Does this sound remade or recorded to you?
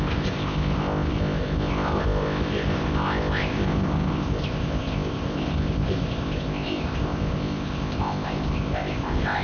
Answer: remade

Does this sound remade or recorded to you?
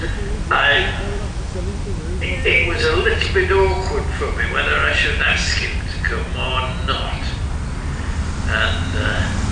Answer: recorded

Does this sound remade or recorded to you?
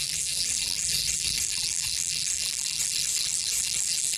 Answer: remade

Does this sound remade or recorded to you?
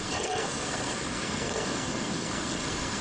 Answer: remade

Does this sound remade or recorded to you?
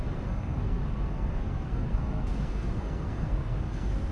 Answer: remade